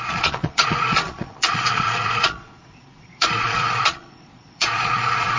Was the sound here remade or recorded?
remade